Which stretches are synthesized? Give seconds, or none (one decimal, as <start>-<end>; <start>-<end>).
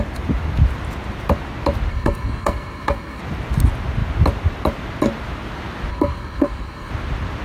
1.9-3.2; 5.9-6.9